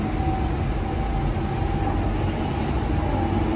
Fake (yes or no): no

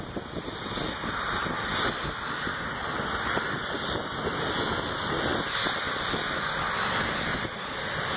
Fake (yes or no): no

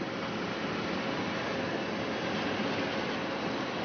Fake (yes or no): no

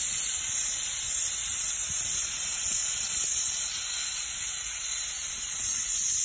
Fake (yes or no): no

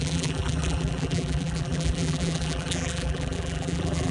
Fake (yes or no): yes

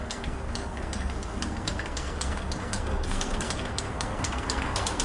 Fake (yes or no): yes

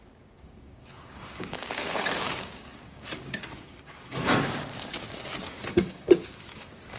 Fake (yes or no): yes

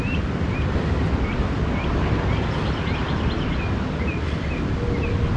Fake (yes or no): no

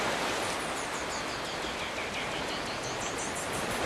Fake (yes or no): no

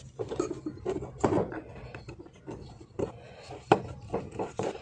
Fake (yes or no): no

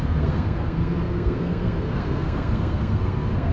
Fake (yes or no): yes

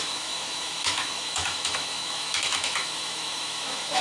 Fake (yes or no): yes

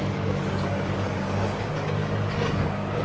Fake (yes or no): yes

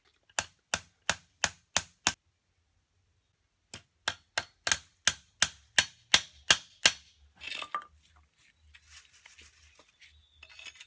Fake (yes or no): no